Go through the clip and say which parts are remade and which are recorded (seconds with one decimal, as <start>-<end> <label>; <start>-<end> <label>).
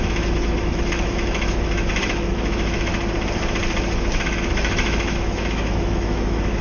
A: 0.0-2.9 remade; 2.9-4.2 recorded; 4.2-6.6 remade